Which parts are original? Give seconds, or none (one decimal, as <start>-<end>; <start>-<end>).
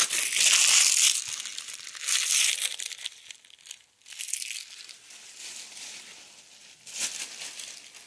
0.0-1.5; 6.4-8.1